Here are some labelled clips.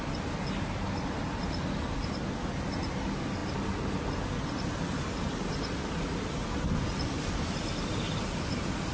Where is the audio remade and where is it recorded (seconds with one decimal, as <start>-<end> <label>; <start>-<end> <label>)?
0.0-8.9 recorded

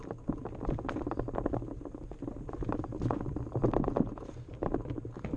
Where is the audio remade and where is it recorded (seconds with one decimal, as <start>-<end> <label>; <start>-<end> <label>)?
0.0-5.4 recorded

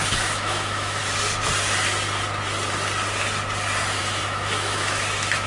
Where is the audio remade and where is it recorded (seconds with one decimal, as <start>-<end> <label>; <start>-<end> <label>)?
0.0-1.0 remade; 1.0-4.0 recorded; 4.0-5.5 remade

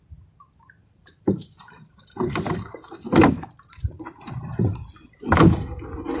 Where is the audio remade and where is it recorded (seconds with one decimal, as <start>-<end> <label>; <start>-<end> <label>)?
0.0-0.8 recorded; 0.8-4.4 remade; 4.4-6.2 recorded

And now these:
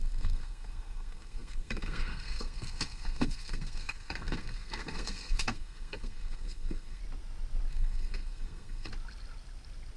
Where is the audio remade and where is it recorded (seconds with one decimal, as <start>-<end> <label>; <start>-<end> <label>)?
0.0-7.0 remade; 7.0-7.7 recorded; 7.7-8.9 remade; 8.9-10.0 recorded

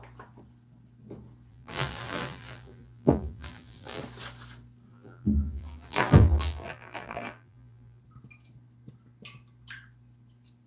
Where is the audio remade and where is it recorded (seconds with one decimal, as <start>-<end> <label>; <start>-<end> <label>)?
0.0-1.5 recorded; 1.5-4.0 remade; 4.0-4.9 recorded; 4.9-8.0 remade; 8.0-10.7 recorded

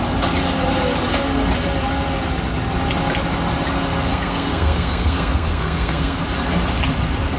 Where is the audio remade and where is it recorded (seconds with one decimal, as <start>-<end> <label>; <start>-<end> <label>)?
0.0-4.1 recorded; 4.1-6.2 remade; 6.2-7.4 recorded

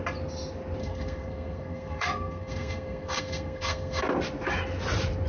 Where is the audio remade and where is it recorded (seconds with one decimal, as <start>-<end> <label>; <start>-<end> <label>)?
0.0-0.8 recorded; 0.8-4.0 remade; 4.0-5.3 recorded